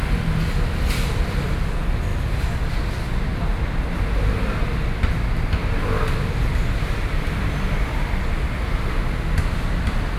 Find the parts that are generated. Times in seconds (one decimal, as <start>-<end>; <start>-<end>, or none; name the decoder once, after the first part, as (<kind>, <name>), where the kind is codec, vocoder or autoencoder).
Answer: none